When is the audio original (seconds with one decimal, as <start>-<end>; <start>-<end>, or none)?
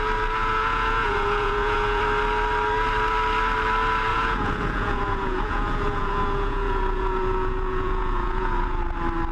0.0-0.4; 2.0-4.1; 8.8-9.3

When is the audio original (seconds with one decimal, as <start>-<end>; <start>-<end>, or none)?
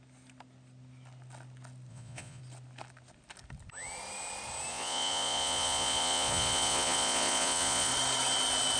0.0-1.9; 2.4-4.7; 7.9-8.8